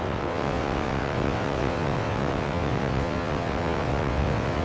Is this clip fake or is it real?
fake